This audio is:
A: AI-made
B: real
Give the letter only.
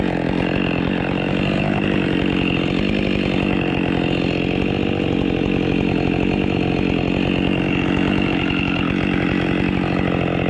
B